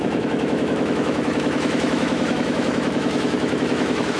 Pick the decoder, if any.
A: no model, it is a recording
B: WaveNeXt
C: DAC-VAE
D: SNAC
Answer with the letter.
C